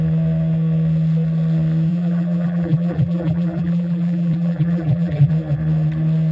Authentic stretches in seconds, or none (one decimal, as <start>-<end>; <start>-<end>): 0.0-1.9; 5.3-6.3